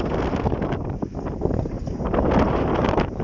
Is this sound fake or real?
real